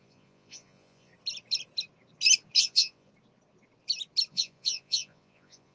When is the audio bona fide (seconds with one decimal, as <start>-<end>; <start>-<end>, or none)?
1.1-2.6; 3.1-4.3